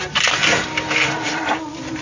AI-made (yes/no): no